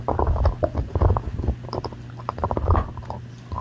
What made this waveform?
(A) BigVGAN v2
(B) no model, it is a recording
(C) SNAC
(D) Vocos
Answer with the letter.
B